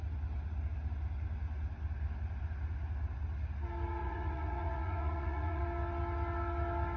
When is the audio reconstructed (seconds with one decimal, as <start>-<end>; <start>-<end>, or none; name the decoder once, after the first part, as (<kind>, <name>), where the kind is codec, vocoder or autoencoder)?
4.0-5.6 (vocoder, Vocos)